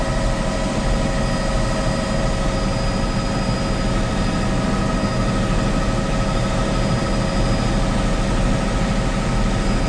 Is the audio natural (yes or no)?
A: yes